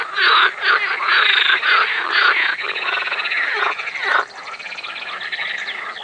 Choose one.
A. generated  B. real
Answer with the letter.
B